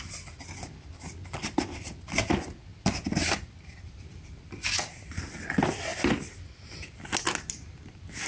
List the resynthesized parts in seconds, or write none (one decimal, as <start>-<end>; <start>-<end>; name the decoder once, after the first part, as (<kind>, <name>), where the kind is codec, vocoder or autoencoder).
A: 0.0-2.7 (vocoder, BigVGAN v2); 3.2-5.9; 7.5-8.3